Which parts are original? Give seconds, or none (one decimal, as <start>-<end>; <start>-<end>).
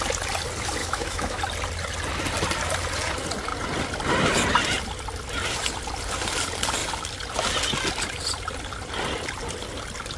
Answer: 0.0-0.8; 1.4-10.2